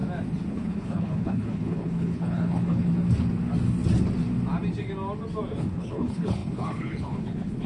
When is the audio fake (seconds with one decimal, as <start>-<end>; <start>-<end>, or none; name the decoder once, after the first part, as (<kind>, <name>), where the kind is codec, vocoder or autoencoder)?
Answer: 0.5-2.9 (codec, HILCodec); 5.7-7.7